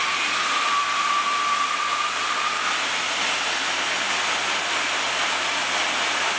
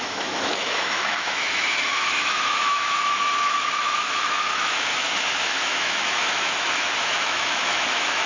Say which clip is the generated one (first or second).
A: second